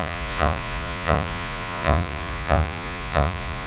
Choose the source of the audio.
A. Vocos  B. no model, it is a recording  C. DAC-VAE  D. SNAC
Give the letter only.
A